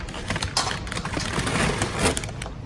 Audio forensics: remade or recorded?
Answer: recorded